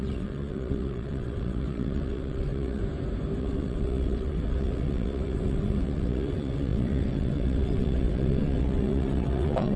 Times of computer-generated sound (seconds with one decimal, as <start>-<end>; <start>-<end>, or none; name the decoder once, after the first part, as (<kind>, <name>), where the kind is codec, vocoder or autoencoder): 0.0-2.8 (vocoder, WaveNeXt); 3.4-9.8